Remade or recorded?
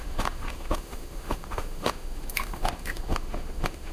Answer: remade